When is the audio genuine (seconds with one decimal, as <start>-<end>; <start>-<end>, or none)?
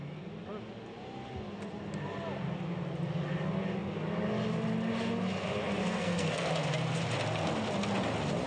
0.0-5.8; 6.5-8.5